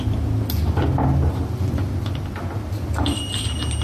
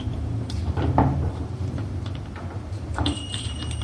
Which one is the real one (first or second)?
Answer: first